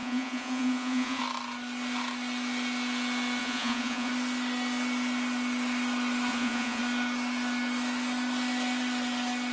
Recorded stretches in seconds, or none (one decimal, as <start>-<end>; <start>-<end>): 1.2-3.4; 4.1-6.3; 6.8-9.5